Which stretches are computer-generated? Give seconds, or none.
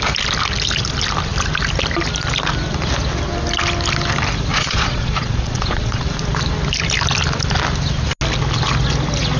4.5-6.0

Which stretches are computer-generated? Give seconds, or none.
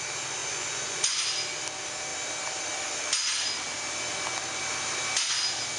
0.4-1.2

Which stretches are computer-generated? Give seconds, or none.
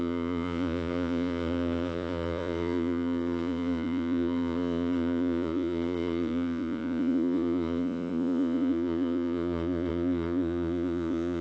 0.0-11.4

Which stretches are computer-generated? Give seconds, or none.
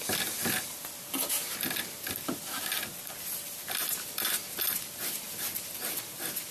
none